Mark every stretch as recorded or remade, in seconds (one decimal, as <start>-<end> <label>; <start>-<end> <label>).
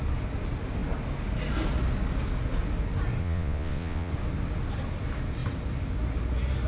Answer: 0.0-3.2 recorded; 3.2-4.1 remade; 4.1-6.7 recorded